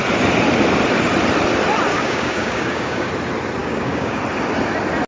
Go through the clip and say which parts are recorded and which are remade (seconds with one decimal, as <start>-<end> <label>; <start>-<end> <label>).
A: 0.0-1.9 recorded; 1.9-3.1 remade; 3.1-3.6 recorded; 3.6-4.2 remade; 4.2-5.1 recorded

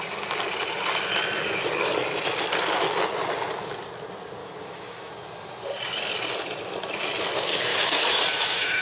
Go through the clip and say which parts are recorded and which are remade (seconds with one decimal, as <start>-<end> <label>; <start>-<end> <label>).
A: 0.0-4.4 recorded; 4.4-5.1 remade; 5.1-7.7 recorded; 7.7-8.8 remade

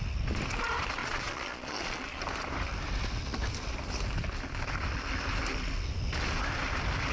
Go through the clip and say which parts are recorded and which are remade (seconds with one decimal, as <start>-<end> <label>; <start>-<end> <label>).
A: 0.0-1.0 recorded; 1.0-2.2 remade; 2.2-7.1 recorded

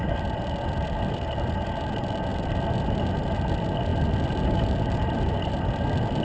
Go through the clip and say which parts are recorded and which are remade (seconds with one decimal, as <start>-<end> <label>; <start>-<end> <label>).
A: 0.0-6.2 recorded

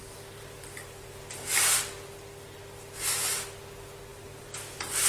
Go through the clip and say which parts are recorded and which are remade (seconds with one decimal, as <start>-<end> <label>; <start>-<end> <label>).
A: 0.0-1.8 remade; 1.8-4.1 recorded; 4.1-5.1 remade

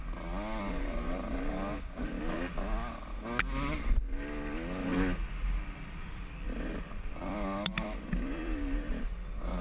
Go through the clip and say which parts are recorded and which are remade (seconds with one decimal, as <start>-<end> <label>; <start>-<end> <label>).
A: 0.0-4.9 recorded; 4.9-9.0 remade; 9.0-9.6 recorded

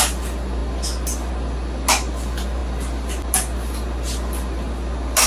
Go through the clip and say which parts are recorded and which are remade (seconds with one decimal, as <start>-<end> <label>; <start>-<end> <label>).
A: 0.0-5.3 recorded